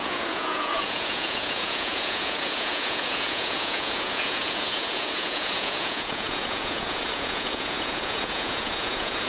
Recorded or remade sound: remade